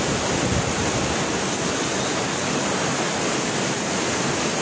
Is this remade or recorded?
recorded